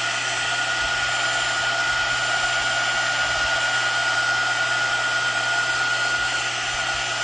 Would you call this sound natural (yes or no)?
yes